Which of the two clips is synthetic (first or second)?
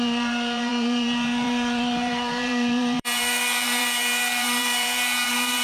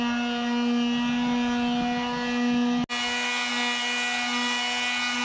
first